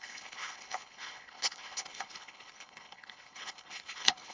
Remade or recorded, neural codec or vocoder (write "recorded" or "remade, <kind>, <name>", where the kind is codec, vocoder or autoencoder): remade, codec, HILCodec